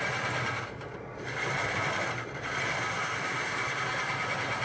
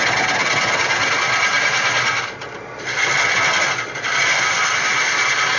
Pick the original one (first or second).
second